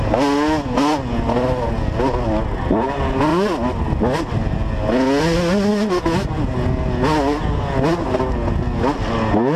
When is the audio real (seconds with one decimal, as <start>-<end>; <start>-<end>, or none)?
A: 0.0-9.6